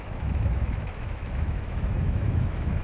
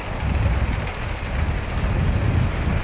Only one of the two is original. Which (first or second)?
second